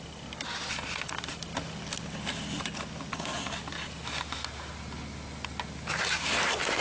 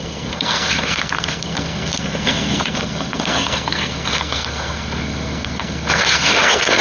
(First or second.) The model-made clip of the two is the second